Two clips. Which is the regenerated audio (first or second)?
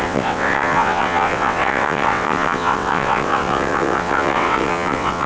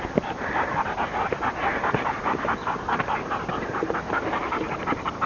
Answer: first